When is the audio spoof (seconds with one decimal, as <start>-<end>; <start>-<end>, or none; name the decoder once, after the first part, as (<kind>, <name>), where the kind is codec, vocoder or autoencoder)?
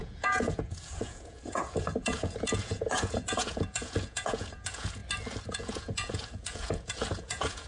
0.0-5.0 (vocoder, Vocos); 5.5-7.7